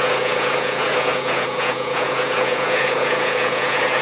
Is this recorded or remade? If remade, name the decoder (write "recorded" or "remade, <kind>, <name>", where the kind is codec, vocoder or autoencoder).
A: remade, vocoder, Vocos